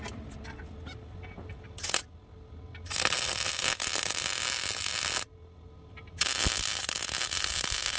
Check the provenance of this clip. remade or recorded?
recorded